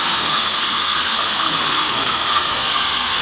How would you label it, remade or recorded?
remade